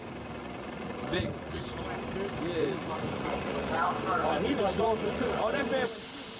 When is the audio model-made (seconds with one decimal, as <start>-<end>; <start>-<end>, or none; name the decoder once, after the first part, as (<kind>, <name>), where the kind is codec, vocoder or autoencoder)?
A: 0.4-1.6 (vocoder, Vocos); 2.6-3.7; 4.2-5.7

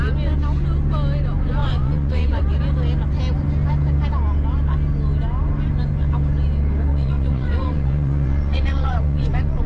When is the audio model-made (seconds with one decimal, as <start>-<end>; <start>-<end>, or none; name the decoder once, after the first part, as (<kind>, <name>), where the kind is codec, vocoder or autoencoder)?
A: 1.6-2.4 (vocoder, Vocos); 6.9-9.7

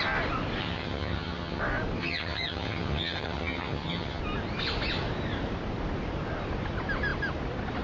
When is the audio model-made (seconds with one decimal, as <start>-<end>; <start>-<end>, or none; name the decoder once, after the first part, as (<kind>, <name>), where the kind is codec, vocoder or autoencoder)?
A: 0.6-1.6 (vocoder, HiFi-GAN); 2.0-4.2

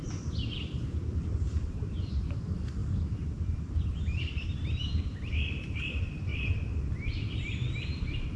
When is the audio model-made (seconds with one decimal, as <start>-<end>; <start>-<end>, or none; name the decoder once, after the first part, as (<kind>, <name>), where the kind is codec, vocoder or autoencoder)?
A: 0.0-6.3 (vocoder, BigVGAN v2); 6.8-8.4

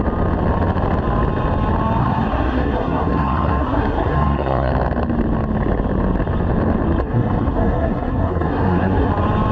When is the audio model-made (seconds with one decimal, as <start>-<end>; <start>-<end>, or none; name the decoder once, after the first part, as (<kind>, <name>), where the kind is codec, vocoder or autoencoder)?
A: 2.0-4.7 (codec, SNAC); 7.0-9.1

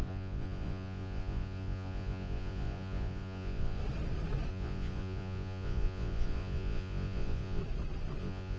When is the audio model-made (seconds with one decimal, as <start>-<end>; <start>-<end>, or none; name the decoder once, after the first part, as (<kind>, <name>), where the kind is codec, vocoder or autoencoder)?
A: 0.0-3.8 (vocoder, Vocos); 4.5-7.6; 8.2-8.6

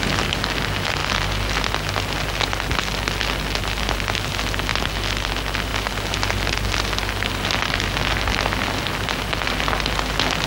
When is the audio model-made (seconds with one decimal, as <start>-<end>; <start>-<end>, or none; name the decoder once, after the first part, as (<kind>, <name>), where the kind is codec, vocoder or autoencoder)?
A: none